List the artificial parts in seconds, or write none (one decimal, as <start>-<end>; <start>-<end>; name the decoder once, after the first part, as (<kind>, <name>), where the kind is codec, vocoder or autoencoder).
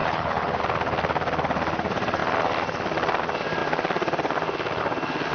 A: 0.0-0.6 (codec, HILCodec)